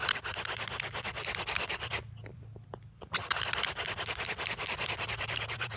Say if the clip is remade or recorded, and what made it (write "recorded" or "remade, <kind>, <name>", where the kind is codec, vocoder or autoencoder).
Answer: remade, vocoder, BigVGAN v2